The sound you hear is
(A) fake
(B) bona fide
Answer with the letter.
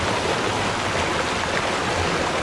B